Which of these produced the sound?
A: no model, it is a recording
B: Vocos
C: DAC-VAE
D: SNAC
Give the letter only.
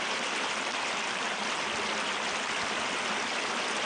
A